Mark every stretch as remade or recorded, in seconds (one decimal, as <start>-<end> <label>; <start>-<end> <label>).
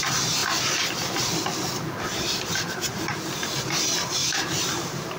0.0-2.1 recorded; 2.1-3.1 remade; 3.1-4.2 recorded; 4.2-5.2 remade